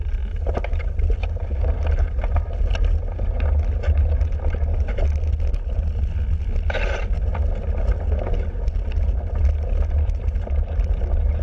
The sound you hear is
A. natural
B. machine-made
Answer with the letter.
A